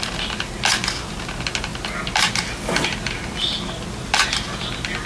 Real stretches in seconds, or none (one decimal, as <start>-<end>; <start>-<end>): 0.0-5.1